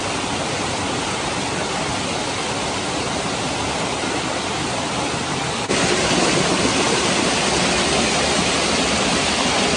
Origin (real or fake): real